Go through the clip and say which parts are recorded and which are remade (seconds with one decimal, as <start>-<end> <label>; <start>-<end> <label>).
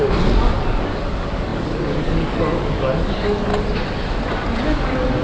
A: 0.0-3.5 remade; 3.5-4.6 recorded; 4.6-5.2 remade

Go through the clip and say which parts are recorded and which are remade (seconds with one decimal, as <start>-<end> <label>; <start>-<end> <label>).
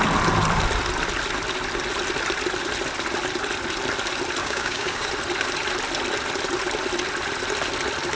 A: 0.0-4.4 recorded; 4.4-5.1 remade; 5.1-8.1 recorded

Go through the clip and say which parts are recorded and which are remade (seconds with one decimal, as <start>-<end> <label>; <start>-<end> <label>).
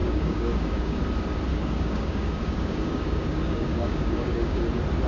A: 0.0-1.0 remade; 1.0-1.5 recorded; 1.5-4.6 remade; 4.6-5.1 recorded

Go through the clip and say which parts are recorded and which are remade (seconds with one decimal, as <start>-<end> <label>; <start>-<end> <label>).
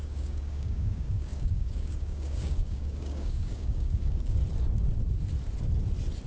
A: 0.0-4.4 remade; 4.4-6.3 recorded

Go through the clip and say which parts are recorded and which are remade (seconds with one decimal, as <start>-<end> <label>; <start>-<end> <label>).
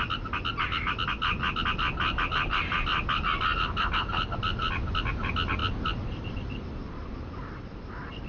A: 0.0-8.3 recorded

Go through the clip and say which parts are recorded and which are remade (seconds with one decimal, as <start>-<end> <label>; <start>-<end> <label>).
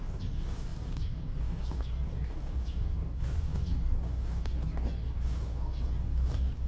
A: 0.0-6.7 remade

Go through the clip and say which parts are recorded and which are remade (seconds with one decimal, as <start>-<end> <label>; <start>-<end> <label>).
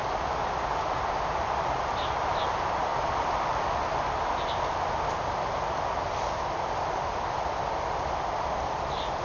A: 0.0-9.2 recorded